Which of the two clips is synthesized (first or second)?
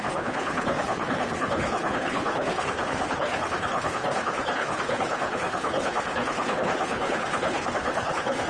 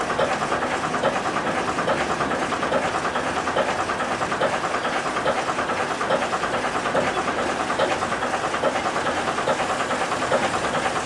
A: first